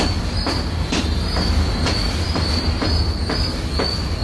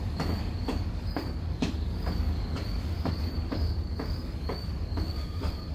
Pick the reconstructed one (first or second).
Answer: second